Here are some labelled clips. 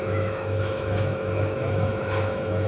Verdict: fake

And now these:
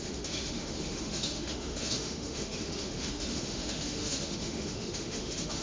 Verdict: fake